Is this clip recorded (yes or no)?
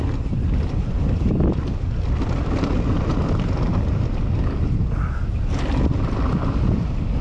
yes